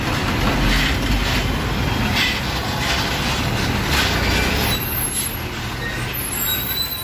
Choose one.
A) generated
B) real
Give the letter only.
B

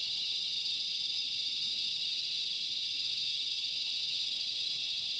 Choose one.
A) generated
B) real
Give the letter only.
A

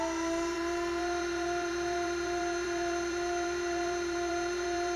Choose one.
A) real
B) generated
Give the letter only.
B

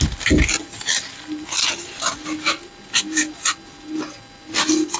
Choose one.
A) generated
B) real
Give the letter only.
B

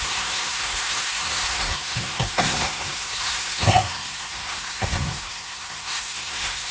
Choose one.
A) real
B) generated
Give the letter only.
B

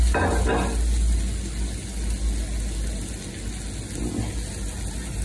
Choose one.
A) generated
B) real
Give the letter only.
B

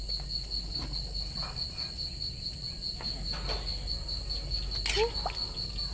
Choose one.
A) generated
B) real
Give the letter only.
B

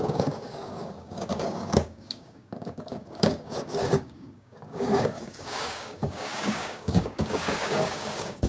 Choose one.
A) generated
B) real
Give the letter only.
A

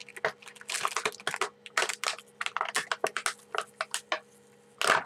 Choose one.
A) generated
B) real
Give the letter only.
B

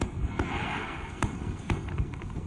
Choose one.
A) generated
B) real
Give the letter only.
A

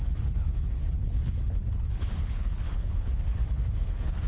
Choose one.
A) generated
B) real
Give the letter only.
A